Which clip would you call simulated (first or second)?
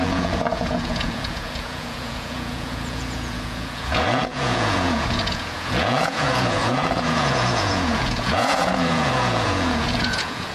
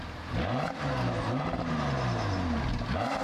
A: first